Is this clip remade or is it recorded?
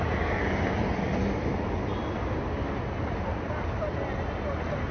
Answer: recorded